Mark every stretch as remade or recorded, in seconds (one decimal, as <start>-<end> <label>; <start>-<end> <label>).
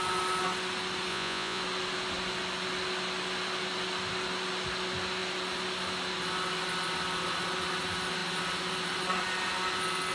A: 0.0-1.1 recorded; 1.1-1.6 remade; 1.6-10.1 recorded